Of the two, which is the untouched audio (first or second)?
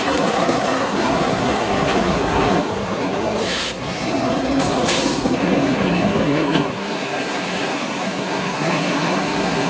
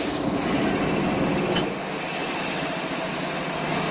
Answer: second